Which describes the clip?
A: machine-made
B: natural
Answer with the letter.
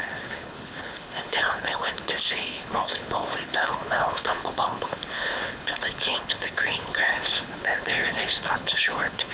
A